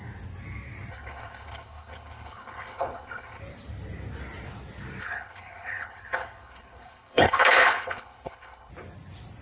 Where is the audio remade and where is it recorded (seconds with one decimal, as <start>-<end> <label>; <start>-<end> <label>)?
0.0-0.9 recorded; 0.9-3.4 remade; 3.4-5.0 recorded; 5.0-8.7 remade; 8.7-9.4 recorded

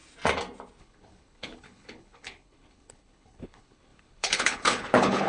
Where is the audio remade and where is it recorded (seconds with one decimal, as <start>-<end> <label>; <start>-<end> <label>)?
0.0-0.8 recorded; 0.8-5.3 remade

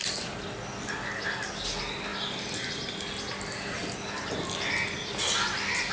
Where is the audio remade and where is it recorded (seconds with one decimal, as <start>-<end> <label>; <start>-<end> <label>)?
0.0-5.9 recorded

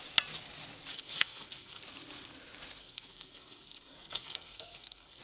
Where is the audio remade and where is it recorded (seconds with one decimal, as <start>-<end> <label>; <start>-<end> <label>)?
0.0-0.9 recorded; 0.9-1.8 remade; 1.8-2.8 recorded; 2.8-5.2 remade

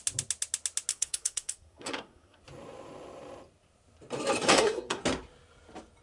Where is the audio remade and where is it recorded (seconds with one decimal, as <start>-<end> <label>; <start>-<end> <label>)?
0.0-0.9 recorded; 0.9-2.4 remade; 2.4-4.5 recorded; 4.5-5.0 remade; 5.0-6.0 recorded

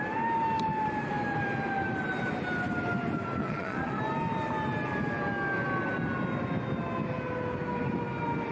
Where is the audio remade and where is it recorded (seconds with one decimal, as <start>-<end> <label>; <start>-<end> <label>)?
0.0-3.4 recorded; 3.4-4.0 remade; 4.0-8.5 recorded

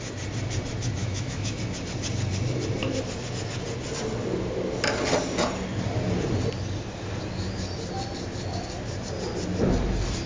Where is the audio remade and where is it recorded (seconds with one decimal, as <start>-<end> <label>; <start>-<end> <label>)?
0.0-1.0 recorded; 1.0-1.6 remade; 1.6-10.3 recorded